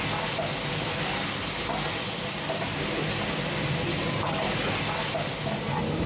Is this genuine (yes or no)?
yes